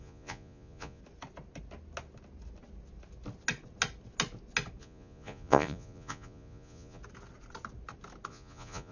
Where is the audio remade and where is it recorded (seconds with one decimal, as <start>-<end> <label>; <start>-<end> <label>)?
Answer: 0.0-1.0 remade; 1.0-4.8 recorded; 4.8-7.0 remade; 7.0-8.3 recorded; 8.3-8.9 remade